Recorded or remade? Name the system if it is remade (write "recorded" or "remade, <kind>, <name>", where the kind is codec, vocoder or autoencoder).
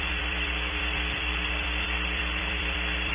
remade, vocoder, BigVGAN v2